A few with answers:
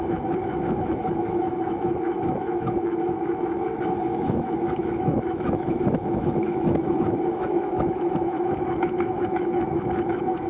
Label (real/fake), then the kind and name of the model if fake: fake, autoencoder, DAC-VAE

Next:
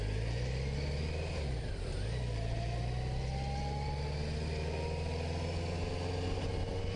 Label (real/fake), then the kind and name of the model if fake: real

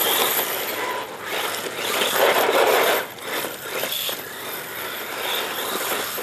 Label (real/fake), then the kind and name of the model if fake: real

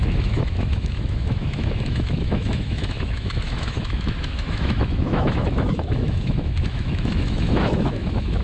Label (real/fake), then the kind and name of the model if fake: fake, autoencoder, DAC-VAE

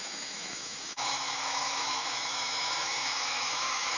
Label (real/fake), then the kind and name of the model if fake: fake, autoencoder, DAC-VAE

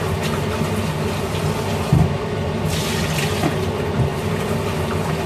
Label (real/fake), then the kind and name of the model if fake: real